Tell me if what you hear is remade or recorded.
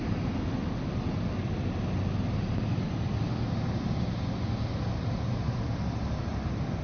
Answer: recorded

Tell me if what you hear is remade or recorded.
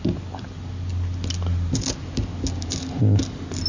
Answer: recorded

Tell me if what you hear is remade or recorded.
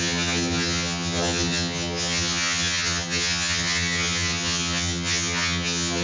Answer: remade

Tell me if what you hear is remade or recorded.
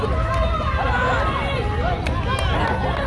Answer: recorded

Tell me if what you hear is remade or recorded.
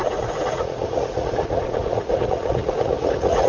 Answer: remade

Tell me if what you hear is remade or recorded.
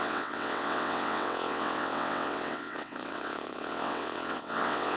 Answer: remade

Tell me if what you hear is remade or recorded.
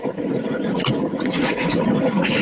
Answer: remade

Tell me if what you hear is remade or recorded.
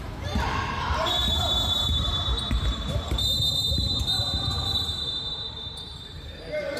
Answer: remade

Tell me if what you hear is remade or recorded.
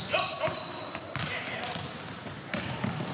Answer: recorded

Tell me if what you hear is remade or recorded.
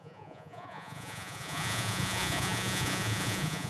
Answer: remade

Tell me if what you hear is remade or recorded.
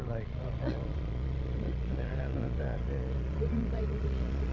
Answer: remade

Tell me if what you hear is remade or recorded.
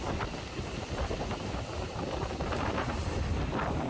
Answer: recorded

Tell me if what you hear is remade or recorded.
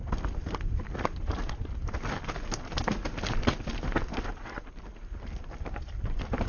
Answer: recorded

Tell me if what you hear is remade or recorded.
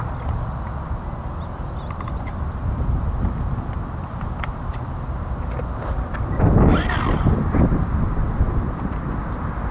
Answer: recorded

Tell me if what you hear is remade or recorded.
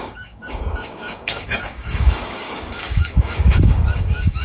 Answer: remade